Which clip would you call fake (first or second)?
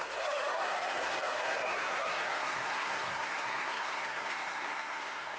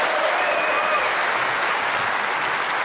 first